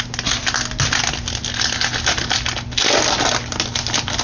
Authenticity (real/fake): real